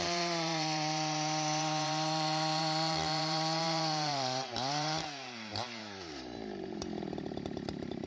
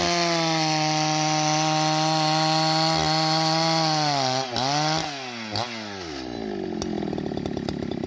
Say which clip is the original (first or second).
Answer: second